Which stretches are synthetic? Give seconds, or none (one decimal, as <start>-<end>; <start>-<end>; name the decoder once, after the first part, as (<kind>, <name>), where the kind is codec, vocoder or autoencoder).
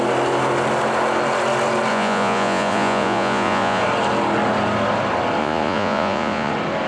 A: 1.9-3.8 (vocoder, Vocos); 5.4-6.5